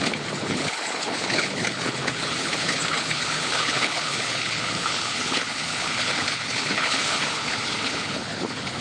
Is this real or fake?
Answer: fake